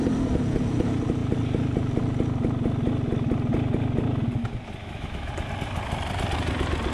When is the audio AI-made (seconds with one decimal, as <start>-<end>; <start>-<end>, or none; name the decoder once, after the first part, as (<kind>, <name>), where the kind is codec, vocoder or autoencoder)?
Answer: 4.8-5.3 (autoencoder, DAC-VAE)